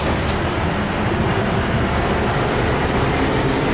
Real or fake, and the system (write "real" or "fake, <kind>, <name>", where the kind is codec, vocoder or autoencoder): real